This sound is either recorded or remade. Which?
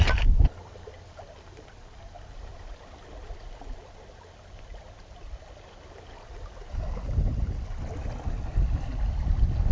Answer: recorded